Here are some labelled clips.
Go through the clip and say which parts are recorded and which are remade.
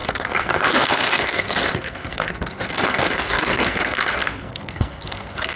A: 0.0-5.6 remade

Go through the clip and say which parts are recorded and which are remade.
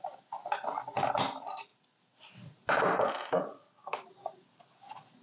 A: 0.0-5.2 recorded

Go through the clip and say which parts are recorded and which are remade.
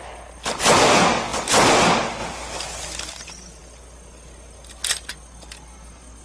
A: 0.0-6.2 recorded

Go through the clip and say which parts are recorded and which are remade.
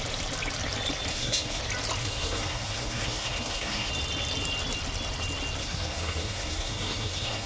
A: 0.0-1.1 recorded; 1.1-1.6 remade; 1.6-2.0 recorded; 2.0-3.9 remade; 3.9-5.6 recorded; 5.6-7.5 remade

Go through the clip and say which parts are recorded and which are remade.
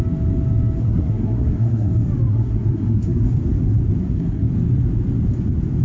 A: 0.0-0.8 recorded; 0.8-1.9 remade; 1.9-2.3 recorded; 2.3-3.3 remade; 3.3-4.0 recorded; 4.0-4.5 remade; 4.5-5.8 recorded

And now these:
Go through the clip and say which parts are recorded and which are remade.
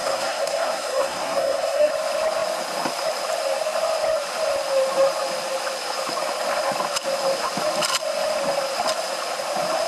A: 0.0-1.9 remade; 1.9-9.9 recorded